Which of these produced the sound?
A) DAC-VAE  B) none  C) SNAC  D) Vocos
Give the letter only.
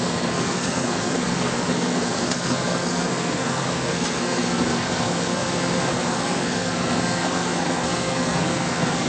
C